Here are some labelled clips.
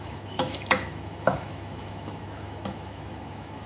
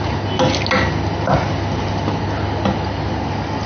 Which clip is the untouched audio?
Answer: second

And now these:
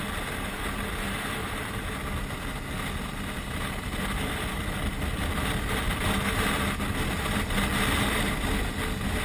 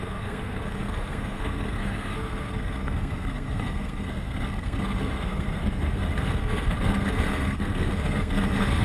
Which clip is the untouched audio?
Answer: first